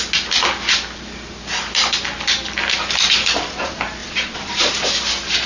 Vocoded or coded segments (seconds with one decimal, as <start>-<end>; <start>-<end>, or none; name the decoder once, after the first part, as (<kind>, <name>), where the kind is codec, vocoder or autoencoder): 4.0-4.7 (vocoder, Vocos)